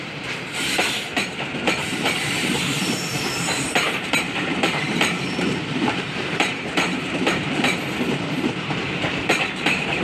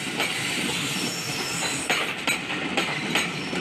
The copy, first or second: first